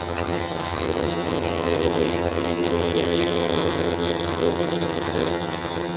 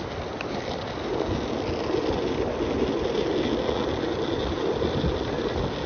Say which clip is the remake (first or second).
first